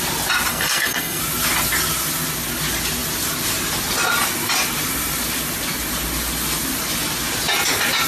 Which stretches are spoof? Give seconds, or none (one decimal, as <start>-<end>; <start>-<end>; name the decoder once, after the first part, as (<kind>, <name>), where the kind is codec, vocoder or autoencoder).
0.5-1.2 (codec, SNAC)